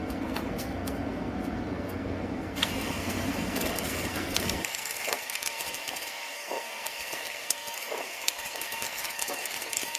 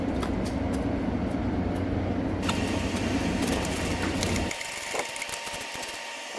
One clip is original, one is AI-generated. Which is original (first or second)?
second